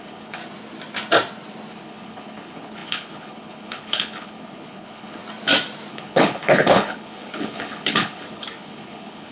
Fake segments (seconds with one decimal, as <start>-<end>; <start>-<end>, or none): 0.0-0.4; 1.7-5.2; 5.9-9.3

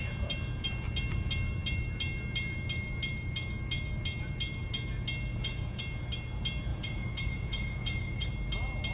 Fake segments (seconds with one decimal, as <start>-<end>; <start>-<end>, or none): 5.3-5.8; 6.7-8.3

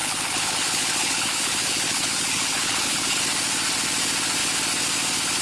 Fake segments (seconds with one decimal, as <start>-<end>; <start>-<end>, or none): 0.0-3.2

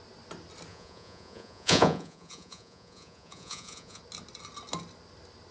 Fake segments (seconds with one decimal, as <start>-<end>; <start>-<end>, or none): 0.7-4.0